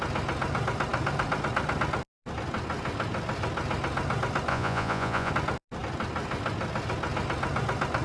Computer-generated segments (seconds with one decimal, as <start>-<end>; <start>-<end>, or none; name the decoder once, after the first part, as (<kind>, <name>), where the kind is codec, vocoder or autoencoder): 4.5-5.3 (vocoder, Vocos)